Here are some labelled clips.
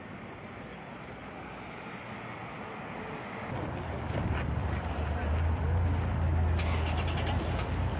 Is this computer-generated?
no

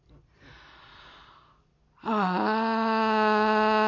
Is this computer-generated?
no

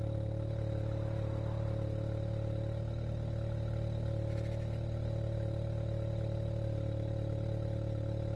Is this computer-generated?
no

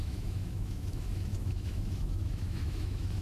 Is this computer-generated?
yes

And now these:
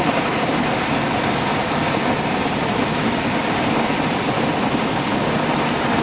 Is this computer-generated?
yes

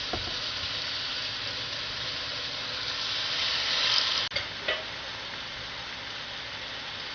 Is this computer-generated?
no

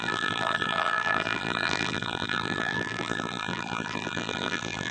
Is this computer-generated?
yes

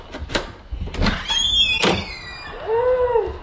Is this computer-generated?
no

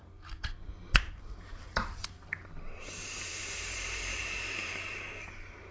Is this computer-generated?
yes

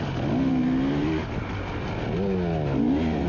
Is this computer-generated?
no